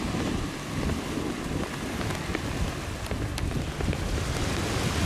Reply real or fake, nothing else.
real